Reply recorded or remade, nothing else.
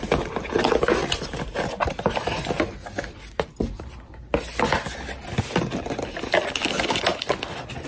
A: recorded